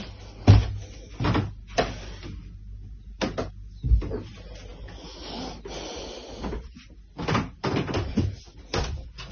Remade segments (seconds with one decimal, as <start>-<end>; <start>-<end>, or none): none